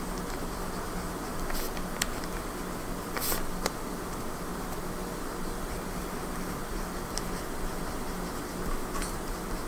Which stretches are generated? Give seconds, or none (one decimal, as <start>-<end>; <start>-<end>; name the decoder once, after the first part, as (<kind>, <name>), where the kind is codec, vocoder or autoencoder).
none